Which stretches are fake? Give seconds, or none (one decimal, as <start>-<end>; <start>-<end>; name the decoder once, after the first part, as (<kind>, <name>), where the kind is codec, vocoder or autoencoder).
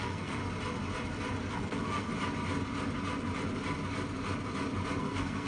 0.0-0.4 (codec, SNAC); 1.5-2.1; 5.0-5.5